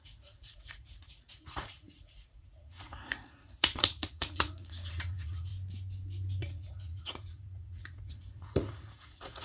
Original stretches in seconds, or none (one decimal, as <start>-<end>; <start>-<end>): 5.5-6.4